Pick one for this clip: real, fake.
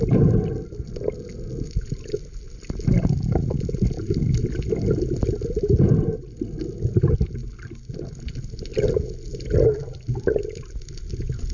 real